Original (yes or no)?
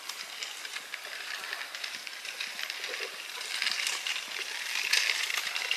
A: yes